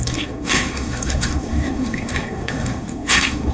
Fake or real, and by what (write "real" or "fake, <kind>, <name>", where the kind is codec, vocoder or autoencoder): fake, codec, SNAC